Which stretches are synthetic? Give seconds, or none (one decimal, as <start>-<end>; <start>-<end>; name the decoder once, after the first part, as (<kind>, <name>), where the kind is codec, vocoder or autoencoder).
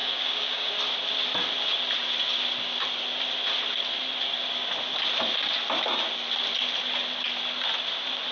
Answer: 0.0-0.7 (codec, DAC)